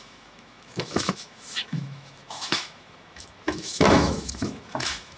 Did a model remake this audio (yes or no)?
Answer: yes